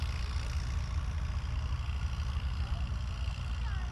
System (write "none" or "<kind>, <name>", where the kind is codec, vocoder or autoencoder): none